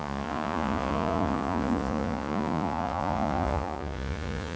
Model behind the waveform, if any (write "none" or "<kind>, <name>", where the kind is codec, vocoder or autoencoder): vocoder, Vocos